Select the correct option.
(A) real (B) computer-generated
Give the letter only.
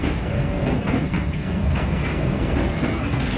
B